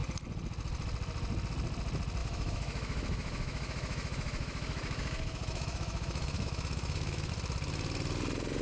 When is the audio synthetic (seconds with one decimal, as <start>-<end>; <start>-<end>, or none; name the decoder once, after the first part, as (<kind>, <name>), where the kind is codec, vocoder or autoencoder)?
2.2-7.3 (autoencoder, DAC-VAE)